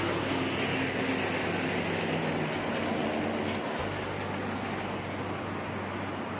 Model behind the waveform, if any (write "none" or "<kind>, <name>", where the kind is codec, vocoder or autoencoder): none